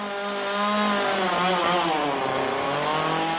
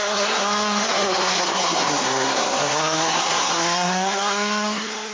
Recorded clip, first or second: first